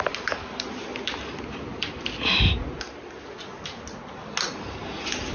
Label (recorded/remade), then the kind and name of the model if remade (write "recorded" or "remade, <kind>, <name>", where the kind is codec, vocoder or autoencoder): recorded